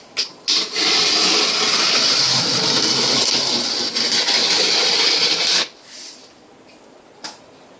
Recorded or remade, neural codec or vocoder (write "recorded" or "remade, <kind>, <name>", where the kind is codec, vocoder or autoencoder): recorded